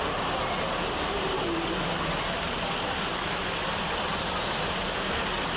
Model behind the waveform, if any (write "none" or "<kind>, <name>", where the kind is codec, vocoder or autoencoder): none